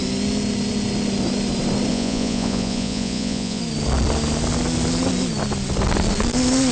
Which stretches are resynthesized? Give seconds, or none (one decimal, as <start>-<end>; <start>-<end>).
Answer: 1.9-3.6